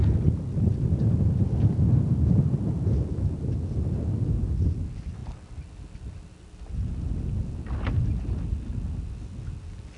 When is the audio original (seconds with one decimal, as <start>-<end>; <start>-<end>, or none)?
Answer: 0.0-10.0